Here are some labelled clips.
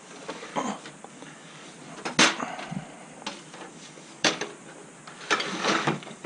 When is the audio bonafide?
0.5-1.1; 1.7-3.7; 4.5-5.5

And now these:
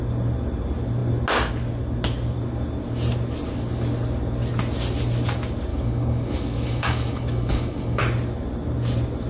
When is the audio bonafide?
0.0-5.7; 8.0-9.3